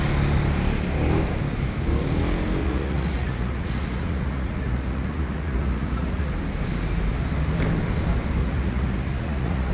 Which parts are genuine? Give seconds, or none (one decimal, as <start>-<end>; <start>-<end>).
0.0-2.6; 6.3-8.4